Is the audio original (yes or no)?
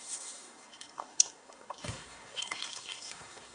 no